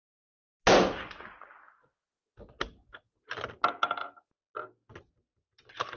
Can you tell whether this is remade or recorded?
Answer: recorded